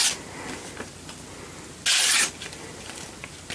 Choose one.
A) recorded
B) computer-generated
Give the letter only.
A